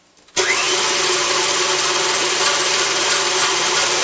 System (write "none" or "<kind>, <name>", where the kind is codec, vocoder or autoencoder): none